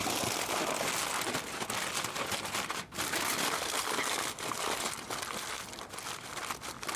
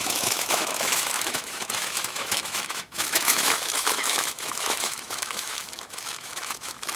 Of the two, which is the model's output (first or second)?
second